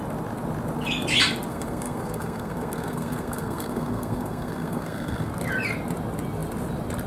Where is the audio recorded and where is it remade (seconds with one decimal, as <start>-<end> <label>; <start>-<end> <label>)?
0.0-1.5 recorded; 1.5-5.3 remade; 5.3-7.1 recorded